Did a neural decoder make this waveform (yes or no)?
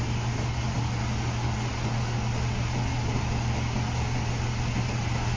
no